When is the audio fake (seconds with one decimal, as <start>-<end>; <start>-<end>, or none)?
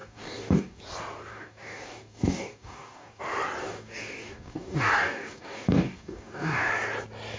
0.0-0.8; 1.3-3.2; 3.6-6.7